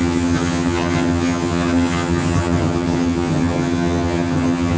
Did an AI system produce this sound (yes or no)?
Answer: yes